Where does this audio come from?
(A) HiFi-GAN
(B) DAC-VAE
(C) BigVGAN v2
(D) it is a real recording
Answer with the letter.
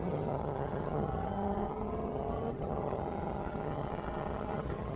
A